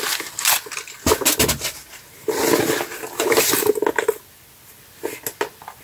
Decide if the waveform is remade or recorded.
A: recorded